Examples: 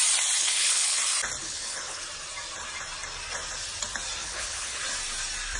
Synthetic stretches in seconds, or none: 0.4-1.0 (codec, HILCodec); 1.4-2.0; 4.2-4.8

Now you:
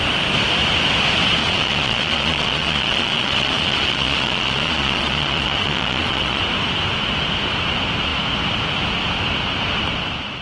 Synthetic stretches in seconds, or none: 1.4-6.4 (vocoder, Vocos)

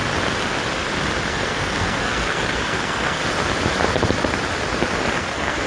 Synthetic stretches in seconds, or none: 1.3-3.2 (codec, SNAC); 5.2-5.7